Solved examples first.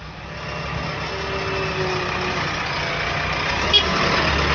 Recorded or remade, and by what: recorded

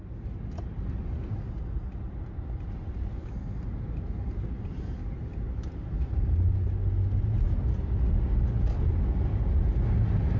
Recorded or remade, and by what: recorded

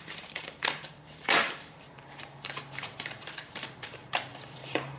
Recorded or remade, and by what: remade, vocoder, BigVGAN v2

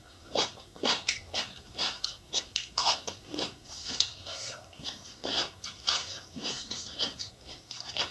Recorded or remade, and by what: remade, codec, SNAC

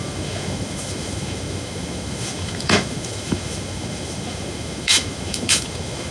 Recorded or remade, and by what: remade, autoencoder, DAC-VAE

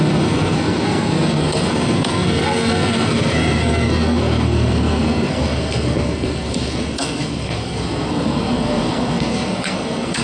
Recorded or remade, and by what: remade, codec, SNAC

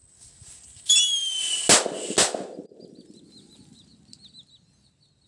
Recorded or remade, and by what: recorded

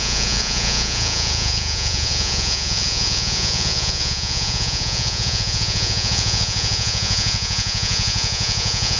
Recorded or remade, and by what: remade, vocoder, Vocos